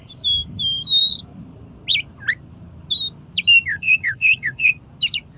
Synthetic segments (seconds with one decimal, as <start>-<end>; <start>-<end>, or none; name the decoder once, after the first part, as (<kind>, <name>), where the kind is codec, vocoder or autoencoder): 3.7-4.7 (codec, HILCodec)